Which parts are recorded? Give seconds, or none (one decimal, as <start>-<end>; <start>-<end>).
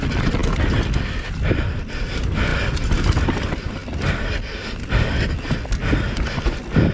0.0-6.9